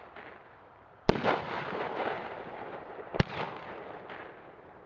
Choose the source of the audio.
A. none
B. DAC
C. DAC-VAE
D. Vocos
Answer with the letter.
A